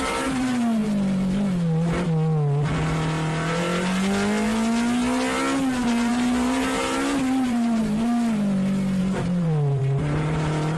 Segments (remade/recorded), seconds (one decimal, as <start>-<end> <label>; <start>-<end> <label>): 0.0-0.8 remade; 0.8-5.9 recorded; 5.9-7.8 remade; 7.8-9.0 recorded; 9.0-10.8 remade